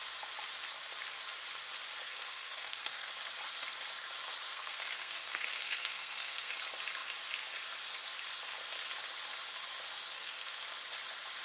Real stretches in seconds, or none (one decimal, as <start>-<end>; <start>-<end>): 0.0-2.0; 3.1-4.5; 6.5-10.1; 10.6-11.4